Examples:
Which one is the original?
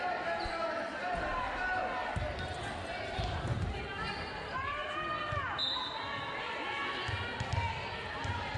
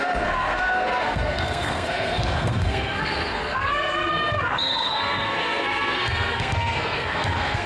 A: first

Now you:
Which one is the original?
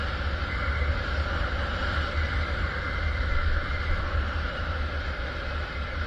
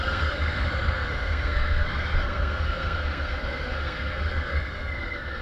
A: first